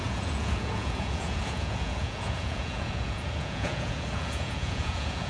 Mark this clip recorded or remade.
remade